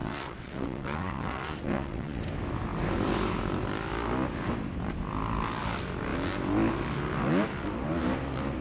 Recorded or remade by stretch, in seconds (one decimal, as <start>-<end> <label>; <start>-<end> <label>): 0.0-2.2 remade; 2.2-8.6 recorded